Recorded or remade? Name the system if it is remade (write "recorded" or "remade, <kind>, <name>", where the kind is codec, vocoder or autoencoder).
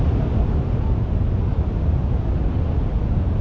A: recorded